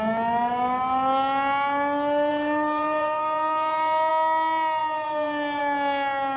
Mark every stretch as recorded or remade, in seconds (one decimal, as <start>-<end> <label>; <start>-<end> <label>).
0.0-2.3 recorded; 2.3-4.1 remade; 4.1-4.8 recorded; 4.8-5.6 remade; 5.6-6.4 recorded